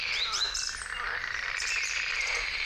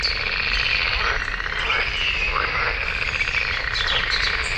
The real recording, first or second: second